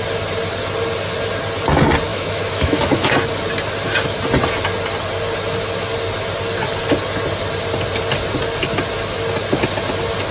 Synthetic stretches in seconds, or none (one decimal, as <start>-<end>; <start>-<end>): 2.1-3.1